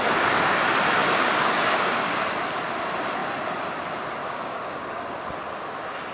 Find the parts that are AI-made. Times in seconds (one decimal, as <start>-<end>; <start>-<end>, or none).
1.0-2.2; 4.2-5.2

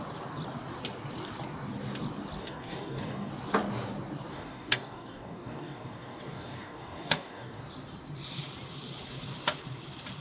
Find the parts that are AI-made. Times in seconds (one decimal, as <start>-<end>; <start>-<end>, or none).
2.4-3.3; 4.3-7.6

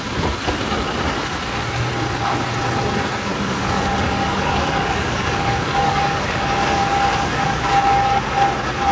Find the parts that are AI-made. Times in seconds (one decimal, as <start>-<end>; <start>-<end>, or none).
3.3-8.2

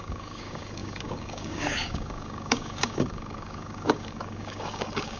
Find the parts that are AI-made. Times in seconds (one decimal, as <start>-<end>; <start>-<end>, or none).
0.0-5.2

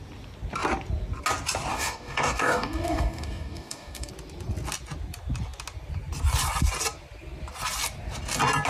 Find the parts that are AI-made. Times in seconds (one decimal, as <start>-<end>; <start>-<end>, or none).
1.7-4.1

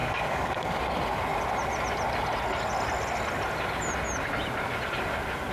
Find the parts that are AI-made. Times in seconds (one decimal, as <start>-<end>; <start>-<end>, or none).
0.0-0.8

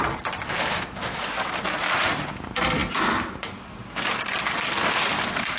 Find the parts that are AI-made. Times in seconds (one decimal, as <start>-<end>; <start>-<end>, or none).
none

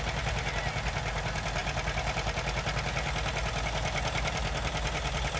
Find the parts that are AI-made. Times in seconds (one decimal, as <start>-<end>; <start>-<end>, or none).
none